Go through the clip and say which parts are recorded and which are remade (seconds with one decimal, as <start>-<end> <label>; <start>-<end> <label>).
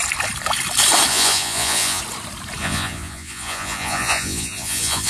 0.0-1.1 recorded; 1.1-2.0 remade; 2.0-2.6 recorded; 2.6-5.1 remade